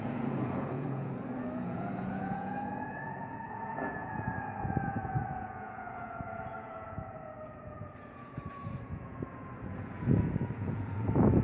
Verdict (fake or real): fake